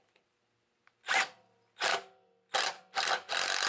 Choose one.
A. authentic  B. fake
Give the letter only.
A